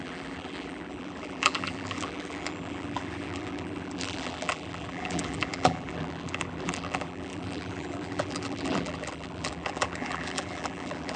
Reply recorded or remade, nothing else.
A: remade